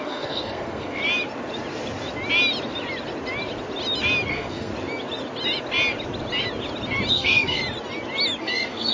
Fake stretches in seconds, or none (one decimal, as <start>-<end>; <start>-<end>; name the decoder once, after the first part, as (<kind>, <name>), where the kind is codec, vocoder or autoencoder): 0.0-1.0 (codec, SNAC); 4.3-4.7; 7.1-7.6; 8.4-8.9